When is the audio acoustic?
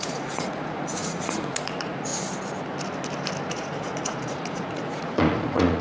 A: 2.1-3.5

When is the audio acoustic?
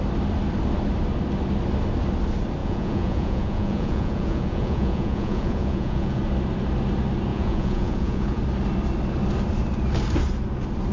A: 0.0-2.6; 6.2-7.3; 8.4-10.9